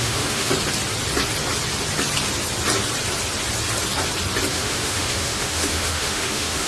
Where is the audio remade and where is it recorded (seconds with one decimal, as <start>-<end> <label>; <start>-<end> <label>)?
0.0-0.5 remade; 0.5-4.5 recorded; 4.5-6.7 remade